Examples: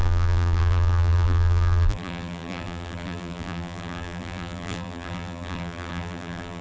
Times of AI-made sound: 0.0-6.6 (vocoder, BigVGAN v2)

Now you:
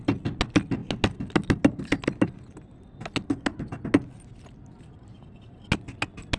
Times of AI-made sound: none